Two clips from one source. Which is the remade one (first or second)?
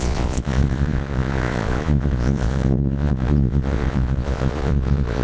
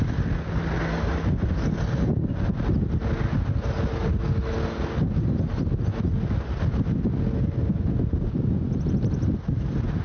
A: first